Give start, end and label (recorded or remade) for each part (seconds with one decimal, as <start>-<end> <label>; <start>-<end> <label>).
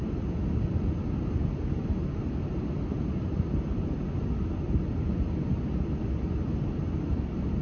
0.0-7.6 recorded